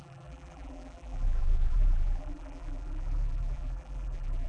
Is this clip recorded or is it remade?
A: remade